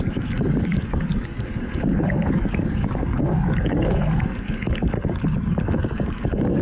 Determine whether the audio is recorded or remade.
remade